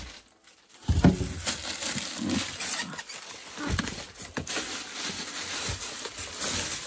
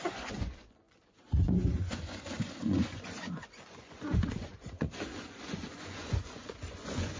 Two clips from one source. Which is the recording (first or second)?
first